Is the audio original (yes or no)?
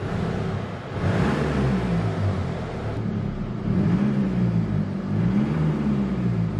yes